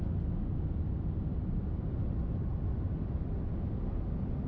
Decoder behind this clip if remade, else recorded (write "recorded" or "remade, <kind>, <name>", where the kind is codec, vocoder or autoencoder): recorded